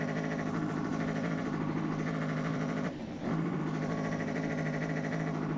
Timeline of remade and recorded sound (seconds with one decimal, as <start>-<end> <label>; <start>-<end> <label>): 0.0-0.9 recorded; 0.9-1.4 remade; 1.4-2.5 recorded; 2.5-3.6 remade; 3.6-5.6 recorded